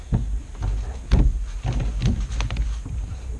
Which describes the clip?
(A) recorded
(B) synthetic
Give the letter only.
A